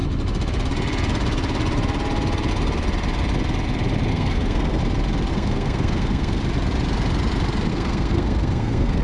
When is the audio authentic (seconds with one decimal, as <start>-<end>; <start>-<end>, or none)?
0.0-4.1; 4.8-5.3; 6.4-7.7